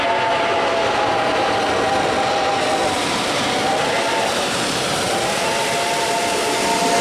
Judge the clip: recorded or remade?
recorded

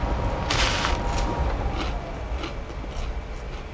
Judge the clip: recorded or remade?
recorded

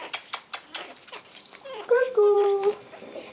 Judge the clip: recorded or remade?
remade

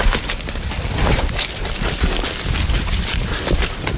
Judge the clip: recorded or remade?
remade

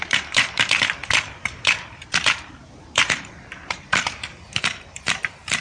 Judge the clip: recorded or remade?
remade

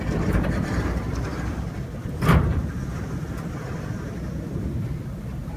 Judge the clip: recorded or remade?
remade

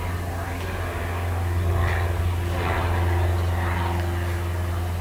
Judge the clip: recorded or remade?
recorded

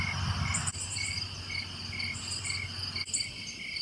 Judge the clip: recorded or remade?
recorded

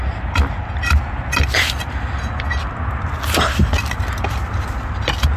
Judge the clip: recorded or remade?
recorded